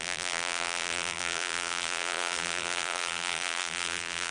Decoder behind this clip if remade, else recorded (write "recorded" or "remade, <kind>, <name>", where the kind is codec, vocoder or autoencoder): remade, vocoder, BigVGAN v2